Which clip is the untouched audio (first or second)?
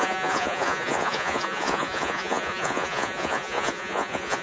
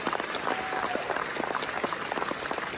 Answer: second